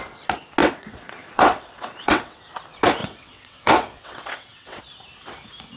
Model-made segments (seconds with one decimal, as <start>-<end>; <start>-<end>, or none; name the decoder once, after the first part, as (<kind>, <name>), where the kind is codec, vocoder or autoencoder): 0.6-2.4 (vocoder, WaveNeXt); 3.0-4.8